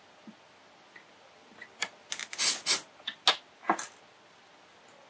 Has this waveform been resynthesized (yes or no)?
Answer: no